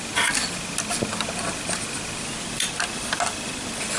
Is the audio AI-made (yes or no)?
no